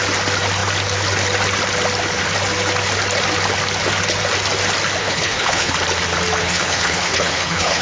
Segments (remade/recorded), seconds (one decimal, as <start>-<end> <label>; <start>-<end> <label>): 0.0-5.0 recorded; 5.0-5.7 remade; 5.7-6.4 recorded; 6.4-7.8 remade